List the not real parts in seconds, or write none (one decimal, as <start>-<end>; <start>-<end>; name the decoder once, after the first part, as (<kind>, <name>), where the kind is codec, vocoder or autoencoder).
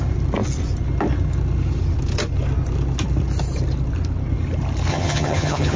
4.9-5.8 (vocoder, HiFi-GAN)